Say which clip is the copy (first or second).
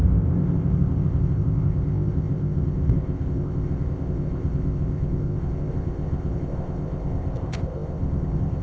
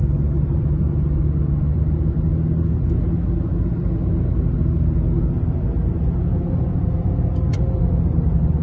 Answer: first